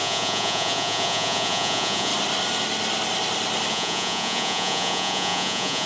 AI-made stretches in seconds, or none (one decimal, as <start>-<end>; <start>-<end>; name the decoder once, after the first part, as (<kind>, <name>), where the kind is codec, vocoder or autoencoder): 0.0-2.1 (vocoder, Vocos); 3.7-5.9